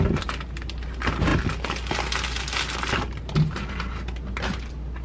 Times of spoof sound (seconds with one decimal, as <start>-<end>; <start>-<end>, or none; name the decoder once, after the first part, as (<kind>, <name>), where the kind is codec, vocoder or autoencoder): none